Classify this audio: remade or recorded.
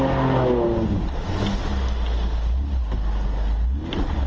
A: recorded